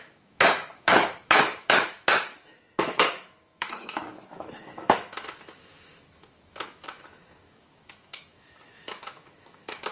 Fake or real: fake